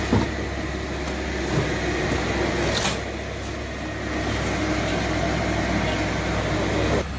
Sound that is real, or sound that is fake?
real